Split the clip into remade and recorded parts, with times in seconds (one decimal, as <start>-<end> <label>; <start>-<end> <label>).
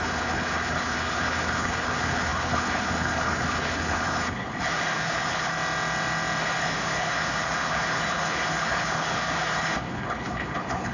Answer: 0.0-5.5 remade; 5.5-6.4 recorded; 6.4-10.9 remade